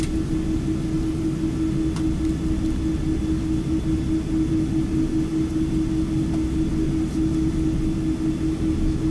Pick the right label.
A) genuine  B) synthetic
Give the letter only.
A